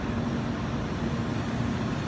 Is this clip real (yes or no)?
yes